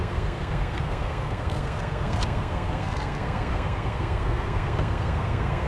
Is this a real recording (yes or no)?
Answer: no